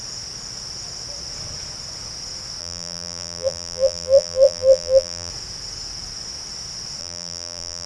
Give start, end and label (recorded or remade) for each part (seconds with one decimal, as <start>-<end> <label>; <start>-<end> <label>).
0.0-2.6 recorded; 2.6-5.3 remade; 5.3-7.0 recorded; 7.0-7.9 remade